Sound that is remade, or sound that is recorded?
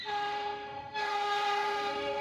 remade